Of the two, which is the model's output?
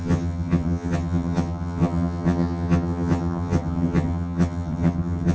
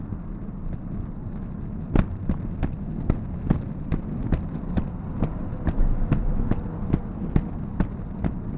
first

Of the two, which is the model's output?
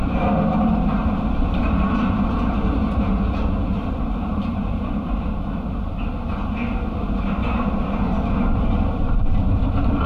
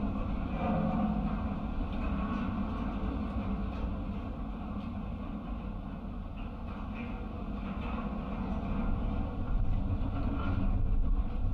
first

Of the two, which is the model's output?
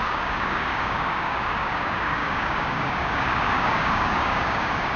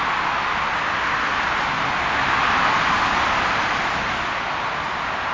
first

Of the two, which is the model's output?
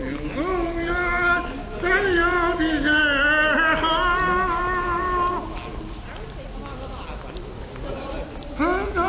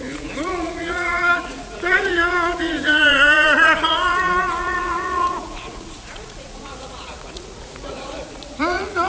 second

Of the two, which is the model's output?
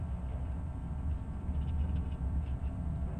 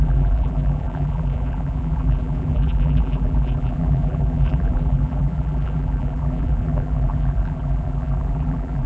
second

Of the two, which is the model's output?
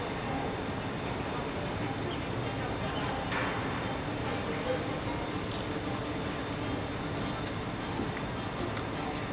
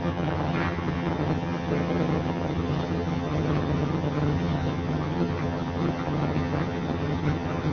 second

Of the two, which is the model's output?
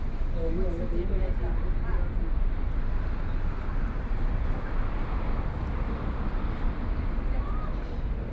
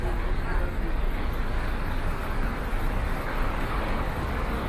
second